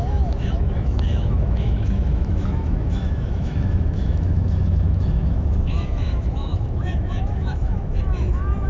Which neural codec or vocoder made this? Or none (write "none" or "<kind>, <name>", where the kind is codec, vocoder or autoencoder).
autoencoder, DAC-VAE